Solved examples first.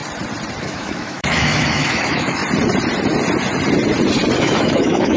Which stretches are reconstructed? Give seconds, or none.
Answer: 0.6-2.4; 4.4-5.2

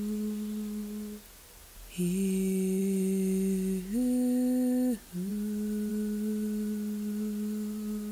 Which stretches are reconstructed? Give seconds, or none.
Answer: none

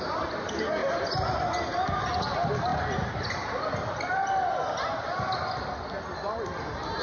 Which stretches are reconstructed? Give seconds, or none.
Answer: none

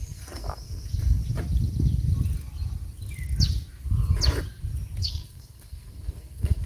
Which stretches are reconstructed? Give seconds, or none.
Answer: 0.0-1.2; 5.0-6.7

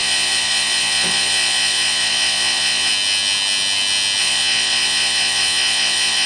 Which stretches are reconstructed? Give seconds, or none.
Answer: 0.0-2.9; 4.2-6.3

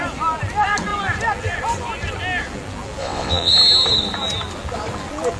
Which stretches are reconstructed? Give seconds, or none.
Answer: 3.0-3.5

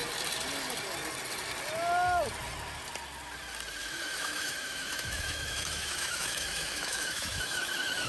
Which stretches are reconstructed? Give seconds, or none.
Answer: 3.8-8.1

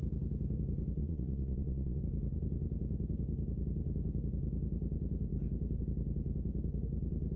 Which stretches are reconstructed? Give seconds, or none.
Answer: 1.0-2.0